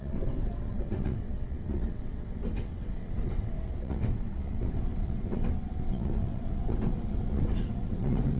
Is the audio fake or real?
fake